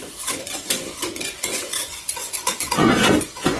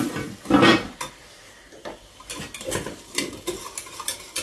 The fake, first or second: first